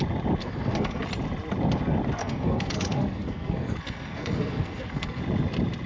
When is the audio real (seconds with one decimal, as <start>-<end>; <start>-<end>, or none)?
0.0-0.4; 1.0-2.2; 5.2-5.9